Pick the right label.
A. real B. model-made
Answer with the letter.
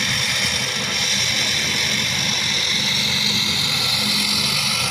A